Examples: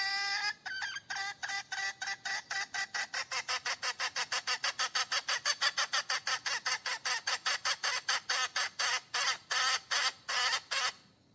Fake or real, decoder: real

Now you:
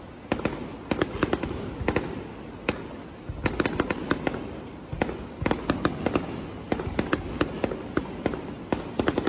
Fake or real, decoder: real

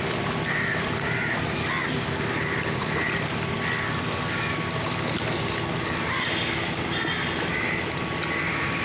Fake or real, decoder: real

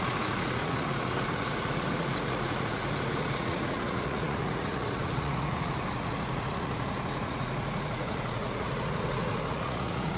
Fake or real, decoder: fake, vocoder, Vocos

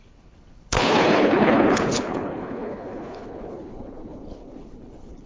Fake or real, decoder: fake, codec, HILCodec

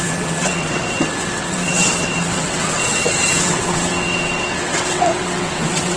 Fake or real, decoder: fake, vocoder, WaveNeXt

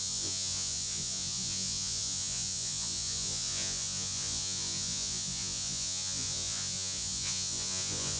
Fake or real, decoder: fake, vocoder, Vocos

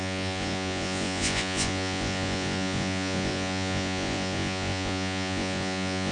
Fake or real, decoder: fake, vocoder, Vocos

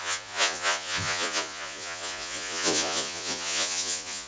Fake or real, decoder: fake, vocoder, Vocos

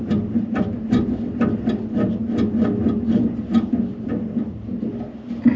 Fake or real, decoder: real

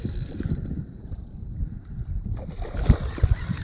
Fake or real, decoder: fake, vocoder, BigVGAN v2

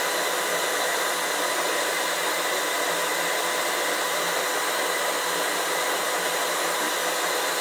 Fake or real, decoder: real